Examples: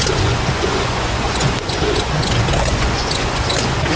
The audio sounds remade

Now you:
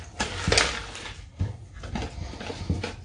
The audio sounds recorded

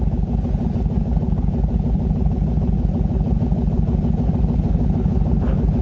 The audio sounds recorded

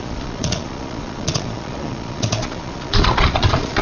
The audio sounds remade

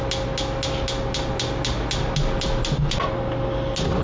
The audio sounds recorded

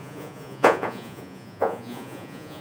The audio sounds remade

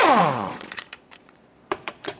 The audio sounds remade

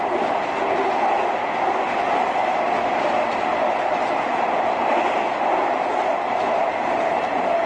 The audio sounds recorded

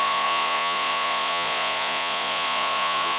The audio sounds remade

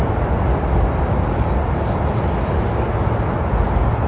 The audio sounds recorded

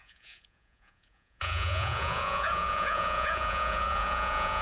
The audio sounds remade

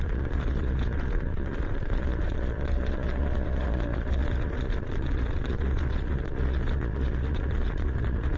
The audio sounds remade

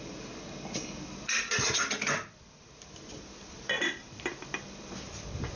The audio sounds recorded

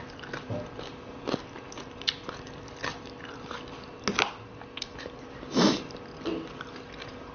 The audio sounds recorded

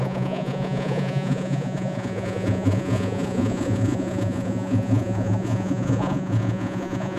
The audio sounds remade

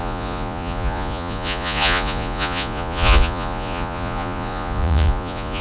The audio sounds remade